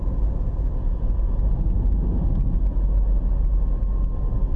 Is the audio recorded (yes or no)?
yes